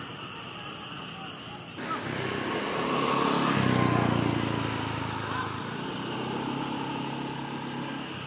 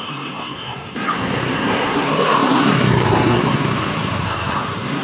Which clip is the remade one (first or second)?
second